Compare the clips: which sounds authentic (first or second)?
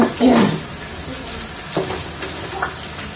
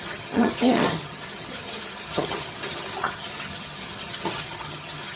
first